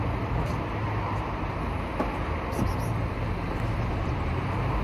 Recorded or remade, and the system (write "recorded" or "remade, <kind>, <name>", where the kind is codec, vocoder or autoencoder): recorded